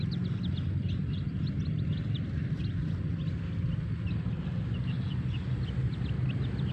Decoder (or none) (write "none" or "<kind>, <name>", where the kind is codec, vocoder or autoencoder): none